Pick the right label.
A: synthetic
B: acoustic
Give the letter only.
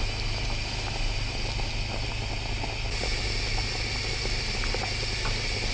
B